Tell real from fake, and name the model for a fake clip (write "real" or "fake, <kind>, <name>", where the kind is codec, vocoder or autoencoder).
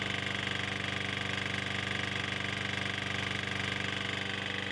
real